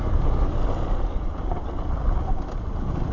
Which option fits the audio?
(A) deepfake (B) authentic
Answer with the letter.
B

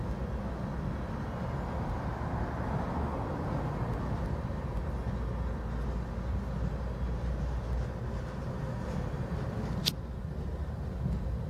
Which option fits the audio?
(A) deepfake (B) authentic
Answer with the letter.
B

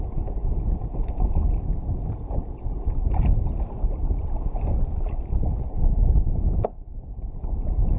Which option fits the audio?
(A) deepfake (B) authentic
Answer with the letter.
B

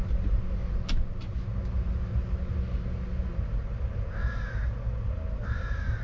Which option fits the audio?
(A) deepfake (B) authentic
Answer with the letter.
B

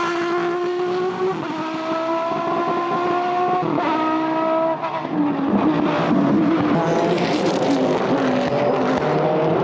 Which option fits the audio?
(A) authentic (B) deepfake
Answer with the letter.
A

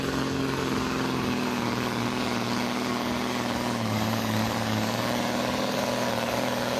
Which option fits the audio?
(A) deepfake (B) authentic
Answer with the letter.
A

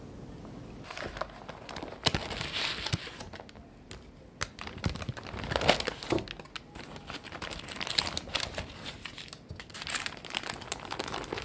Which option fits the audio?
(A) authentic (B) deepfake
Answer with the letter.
A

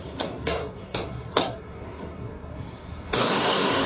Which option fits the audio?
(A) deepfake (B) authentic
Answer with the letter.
A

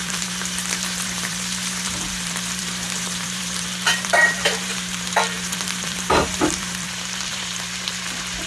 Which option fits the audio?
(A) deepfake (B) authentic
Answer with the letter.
A